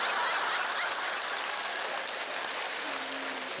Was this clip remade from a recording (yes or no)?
no